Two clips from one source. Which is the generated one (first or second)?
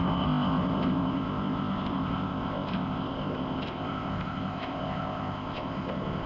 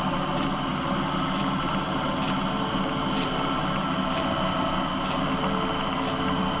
first